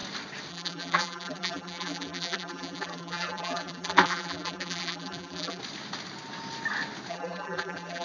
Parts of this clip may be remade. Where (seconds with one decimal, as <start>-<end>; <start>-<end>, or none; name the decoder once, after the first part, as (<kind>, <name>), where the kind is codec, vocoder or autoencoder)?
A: 0.5-5.6 (vocoder, BigVGAN v2); 7.1-8.0